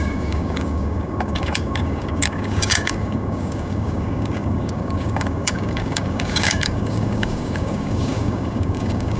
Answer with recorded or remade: remade